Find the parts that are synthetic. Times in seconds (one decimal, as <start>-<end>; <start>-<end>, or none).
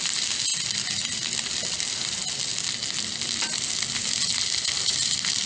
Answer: 0.0-2.5; 3.9-5.5